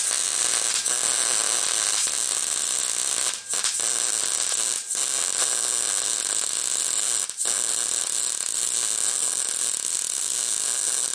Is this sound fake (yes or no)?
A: no